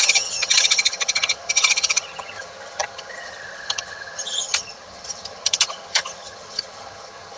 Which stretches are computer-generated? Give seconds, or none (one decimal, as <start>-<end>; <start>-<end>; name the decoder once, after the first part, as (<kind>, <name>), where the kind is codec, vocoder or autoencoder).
0.0-7.4 (vocoder, HiFi-GAN)